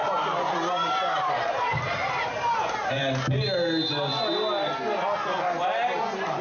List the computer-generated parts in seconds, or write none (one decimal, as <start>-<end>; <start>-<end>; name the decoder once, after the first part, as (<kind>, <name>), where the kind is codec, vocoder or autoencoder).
0.0-3.0 (vocoder, BigVGAN v2)